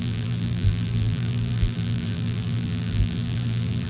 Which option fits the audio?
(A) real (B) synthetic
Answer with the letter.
B